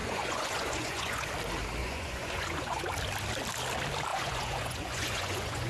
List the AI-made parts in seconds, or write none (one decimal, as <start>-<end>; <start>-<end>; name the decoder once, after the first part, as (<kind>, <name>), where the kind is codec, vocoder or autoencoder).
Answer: 0.0-1.3 (vocoder, Vocos); 1.8-2.8; 4.1-5.7